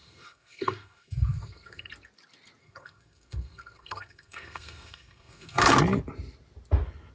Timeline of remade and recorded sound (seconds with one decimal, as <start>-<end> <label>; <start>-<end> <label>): 0.0-1.9 remade; 1.9-2.6 recorded; 2.6-5.7 remade; 5.7-7.1 recorded

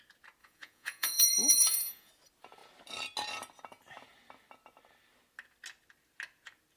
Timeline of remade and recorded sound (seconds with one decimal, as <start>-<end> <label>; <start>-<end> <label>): 0.0-0.4 recorded; 0.4-2.1 remade; 2.1-6.8 recorded

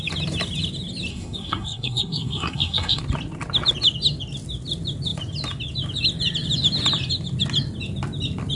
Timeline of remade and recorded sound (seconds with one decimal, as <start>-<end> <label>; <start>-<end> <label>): 0.0-1.1 recorded; 1.1-3.0 remade; 3.0-8.6 recorded

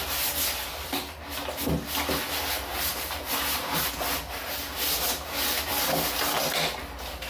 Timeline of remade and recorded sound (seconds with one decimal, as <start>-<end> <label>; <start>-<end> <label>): 0.0-2.7 recorded; 2.7-3.7 remade; 3.7-7.3 recorded

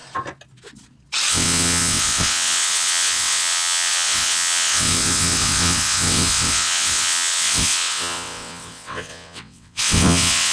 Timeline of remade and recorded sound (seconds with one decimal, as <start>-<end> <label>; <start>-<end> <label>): 0.0-1.3 recorded; 1.3-10.5 remade

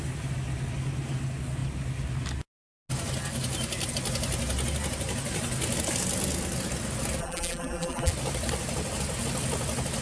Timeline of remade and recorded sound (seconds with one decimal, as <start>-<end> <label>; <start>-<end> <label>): 0.0-7.2 recorded; 7.2-8.1 remade; 8.1-10.0 recorded